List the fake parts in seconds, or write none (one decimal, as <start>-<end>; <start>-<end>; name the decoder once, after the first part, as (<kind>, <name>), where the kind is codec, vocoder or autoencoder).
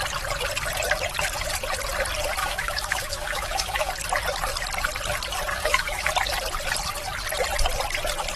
2.4-3.9 (autoencoder, DAC-VAE); 5.5-6.1